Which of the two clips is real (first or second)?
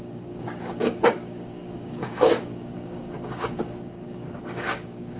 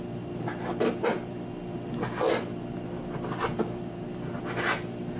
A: second